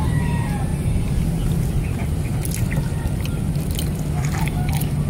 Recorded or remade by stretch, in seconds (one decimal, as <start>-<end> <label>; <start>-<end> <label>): 0.0-5.1 recorded

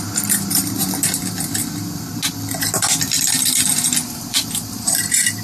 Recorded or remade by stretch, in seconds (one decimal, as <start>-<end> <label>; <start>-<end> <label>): 0.0-0.8 remade; 0.8-4.0 recorded; 4.0-5.4 remade

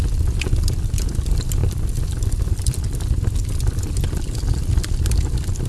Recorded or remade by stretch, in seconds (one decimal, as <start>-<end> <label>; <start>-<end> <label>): 0.0-1.6 recorded; 1.6-2.5 remade; 2.5-5.7 recorded

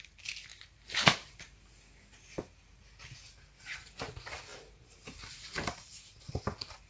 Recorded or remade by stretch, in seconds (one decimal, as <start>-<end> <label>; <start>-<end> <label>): 0.0-0.5 recorded; 0.5-1.3 remade; 1.3-4.5 recorded; 4.5-6.3 remade; 6.3-6.9 recorded

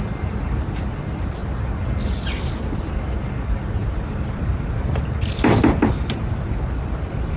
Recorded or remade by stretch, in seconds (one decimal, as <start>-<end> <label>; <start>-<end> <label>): 0.0-3.8 recorded; 3.8-4.7 remade; 4.7-7.4 recorded

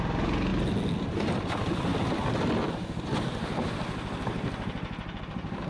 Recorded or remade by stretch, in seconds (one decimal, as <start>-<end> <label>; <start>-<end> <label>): 0.0-5.7 recorded

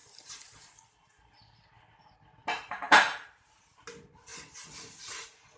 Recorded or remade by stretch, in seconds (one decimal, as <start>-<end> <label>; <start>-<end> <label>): 0.0-0.7 remade; 0.7-2.4 recorded; 2.4-3.6 remade; 3.6-5.6 recorded